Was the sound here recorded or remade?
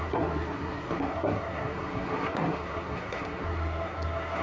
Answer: remade